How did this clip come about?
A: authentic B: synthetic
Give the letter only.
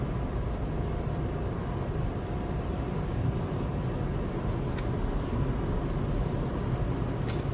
A